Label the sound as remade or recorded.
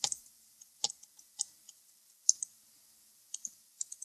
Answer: recorded